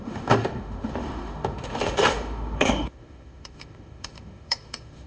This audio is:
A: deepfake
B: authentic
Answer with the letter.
A